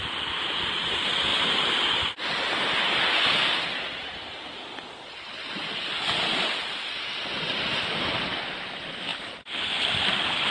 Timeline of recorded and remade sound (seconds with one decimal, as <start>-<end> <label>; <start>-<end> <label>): 0.0-10.5 recorded